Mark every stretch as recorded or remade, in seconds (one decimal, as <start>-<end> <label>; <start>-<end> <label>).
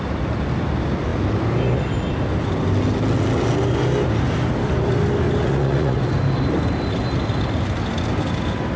0.0-5.4 recorded; 5.4-6.0 remade; 6.0-8.8 recorded